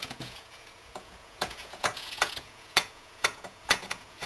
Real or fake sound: fake